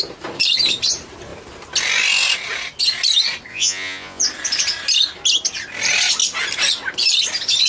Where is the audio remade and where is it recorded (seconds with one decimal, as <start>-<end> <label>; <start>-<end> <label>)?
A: 0.0-3.5 recorded; 3.5-4.2 remade; 4.2-7.7 recorded